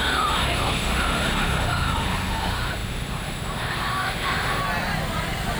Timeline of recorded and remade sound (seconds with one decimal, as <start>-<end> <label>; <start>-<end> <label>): 0.0-4.6 remade; 4.6-5.6 recorded

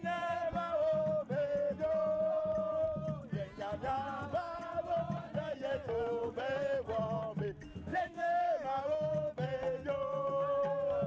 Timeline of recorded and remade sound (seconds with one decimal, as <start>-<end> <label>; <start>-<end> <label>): 0.0-7.9 recorded; 7.9-8.4 remade; 8.4-11.1 recorded

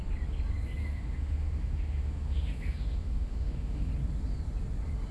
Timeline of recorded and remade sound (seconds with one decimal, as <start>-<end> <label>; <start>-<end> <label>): 0.0-0.8 recorded; 0.8-3.9 remade; 3.9-5.1 recorded

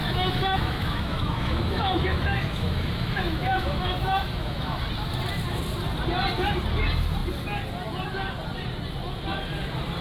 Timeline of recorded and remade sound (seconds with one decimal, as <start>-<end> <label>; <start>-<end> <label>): 0.0-4.8 remade; 4.8-10.0 recorded

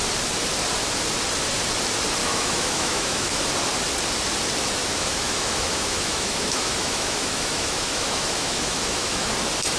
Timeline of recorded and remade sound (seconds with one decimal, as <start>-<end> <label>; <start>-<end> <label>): 0.0-2.2 recorded; 2.2-3.4 remade; 3.4-4.8 recorded; 4.8-9.3 remade; 9.3-9.8 recorded

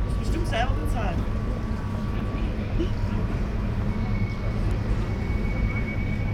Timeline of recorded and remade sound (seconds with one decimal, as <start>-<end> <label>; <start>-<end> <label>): 0.0-6.3 recorded